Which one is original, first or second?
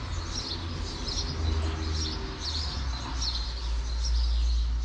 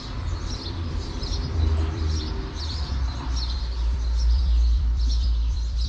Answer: first